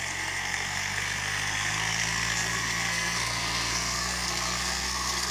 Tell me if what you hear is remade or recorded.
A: remade